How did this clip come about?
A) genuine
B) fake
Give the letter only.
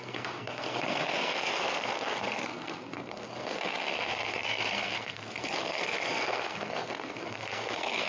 B